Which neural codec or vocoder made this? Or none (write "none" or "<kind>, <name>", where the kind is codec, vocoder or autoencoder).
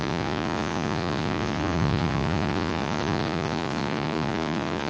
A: vocoder, Vocos